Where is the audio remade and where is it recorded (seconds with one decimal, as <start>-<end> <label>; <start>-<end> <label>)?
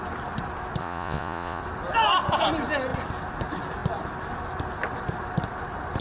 0.0-0.8 recorded; 0.8-1.6 remade; 1.6-6.0 recorded